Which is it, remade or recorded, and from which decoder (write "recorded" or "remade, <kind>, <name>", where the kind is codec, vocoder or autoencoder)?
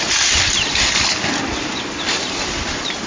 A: recorded